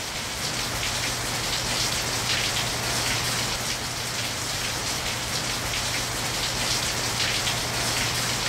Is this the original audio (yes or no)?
yes